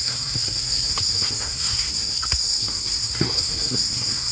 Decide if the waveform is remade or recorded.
remade